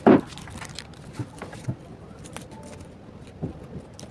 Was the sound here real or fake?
real